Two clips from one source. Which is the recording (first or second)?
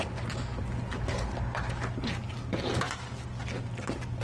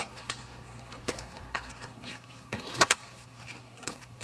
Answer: first